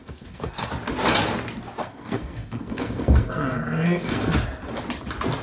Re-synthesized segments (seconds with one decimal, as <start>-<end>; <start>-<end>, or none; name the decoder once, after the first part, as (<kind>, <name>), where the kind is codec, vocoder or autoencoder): 0.0-0.7 (codec, SNAC); 1.8-4.3